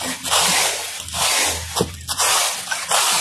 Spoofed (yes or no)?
no